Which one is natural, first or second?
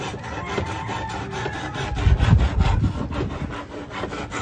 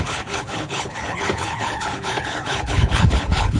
first